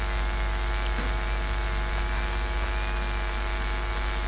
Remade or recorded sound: recorded